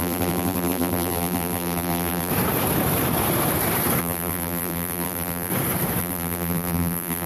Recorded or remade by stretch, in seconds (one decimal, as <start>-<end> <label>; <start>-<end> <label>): 0.0-2.3 remade; 2.3-4.0 recorded; 4.0-5.5 remade; 5.5-6.0 recorded; 6.0-7.3 remade